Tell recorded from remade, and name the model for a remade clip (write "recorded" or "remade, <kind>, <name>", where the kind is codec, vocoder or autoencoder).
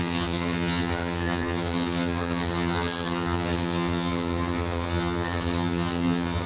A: remade, vocoder, HiFi-GAN